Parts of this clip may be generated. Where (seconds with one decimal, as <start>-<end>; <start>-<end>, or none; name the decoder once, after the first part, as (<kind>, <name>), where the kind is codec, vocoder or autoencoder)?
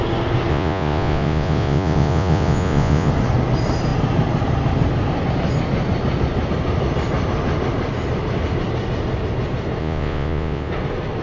0.5-3.1 (vocoder, Vocos); 9.8-10.7